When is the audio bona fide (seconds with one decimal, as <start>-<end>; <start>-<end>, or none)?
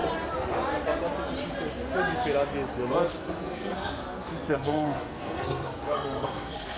0.0-3.1